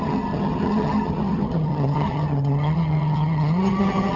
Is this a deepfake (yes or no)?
yes